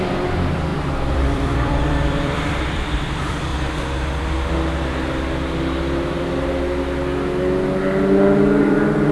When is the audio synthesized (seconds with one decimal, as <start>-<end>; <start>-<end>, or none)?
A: 0.0-3.5; 8.6-9.1